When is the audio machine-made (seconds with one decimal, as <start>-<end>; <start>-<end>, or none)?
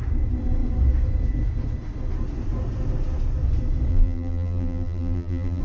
3.9-5.6